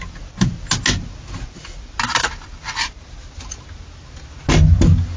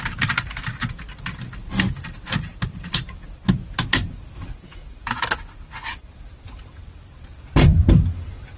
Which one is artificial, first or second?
second